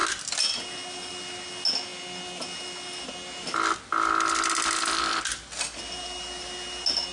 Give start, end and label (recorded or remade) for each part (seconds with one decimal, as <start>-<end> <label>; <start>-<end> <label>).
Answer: 0.0-7.1 recorded